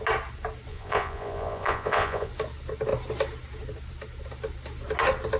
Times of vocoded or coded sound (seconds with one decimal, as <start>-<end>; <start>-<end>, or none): 0.7-2.3